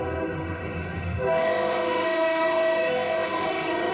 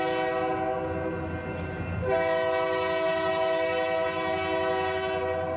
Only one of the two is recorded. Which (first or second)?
second